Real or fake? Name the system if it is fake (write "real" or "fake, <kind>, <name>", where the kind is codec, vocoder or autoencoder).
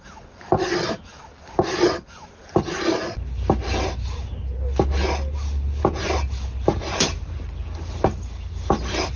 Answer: real